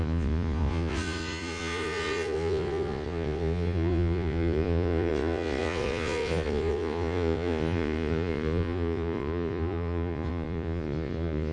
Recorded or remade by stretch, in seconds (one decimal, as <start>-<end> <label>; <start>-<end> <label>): 0.0-11.5 remade